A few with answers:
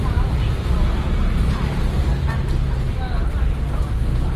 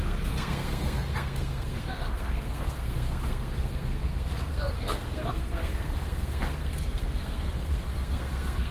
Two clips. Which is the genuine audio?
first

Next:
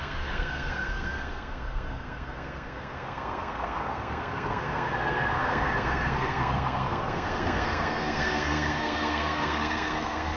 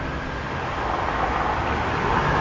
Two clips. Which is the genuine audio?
second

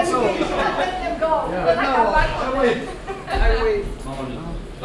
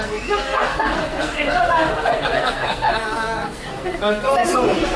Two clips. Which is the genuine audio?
first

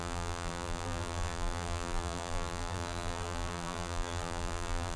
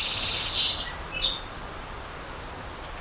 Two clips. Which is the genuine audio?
second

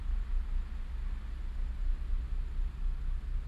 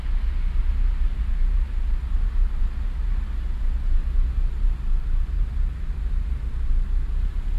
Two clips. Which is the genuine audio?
first